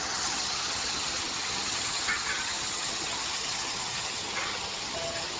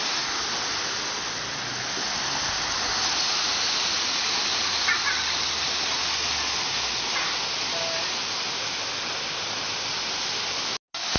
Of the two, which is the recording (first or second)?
second